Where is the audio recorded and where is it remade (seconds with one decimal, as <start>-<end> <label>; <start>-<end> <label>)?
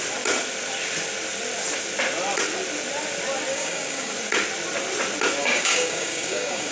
0.0-3.5 recorded; 3.5-4.1 remade; 4.1-5.4 recorded; 5.4-6.7 remade